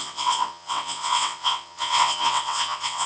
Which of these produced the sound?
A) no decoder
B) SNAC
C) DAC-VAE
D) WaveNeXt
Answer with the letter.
D